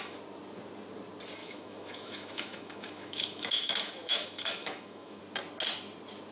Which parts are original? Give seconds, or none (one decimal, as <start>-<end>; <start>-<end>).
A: 0.0-1.4; 5.2-6.3